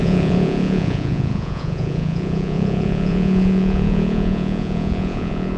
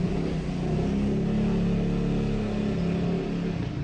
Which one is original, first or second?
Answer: second